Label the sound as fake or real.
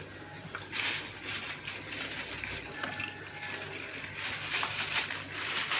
fake